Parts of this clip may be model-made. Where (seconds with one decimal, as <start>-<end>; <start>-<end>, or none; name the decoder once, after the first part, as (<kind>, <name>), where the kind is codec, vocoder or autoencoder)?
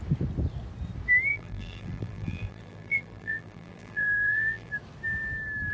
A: 1.3-4.7 (vocoder, BigVGAN v2)